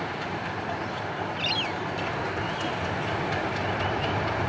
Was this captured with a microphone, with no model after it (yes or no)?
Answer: yes